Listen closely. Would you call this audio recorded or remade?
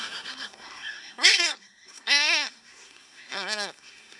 remade